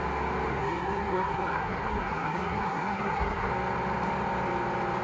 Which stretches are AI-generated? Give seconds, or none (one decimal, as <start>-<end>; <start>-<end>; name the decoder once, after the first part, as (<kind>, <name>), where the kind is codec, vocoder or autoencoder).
0.5-3.5 (codec, SNAC)